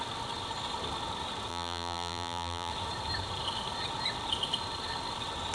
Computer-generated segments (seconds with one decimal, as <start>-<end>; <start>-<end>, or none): 1.5-2.7